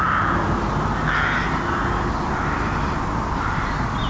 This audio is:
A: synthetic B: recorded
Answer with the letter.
B